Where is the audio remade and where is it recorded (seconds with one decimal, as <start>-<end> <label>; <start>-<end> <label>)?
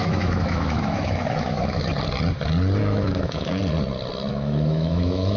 0.0-1.9 remade; 1.9-2.8 recorded; 2.8-3.6 remade; 3.6-4.3 recorded; 4.3-5.4 remade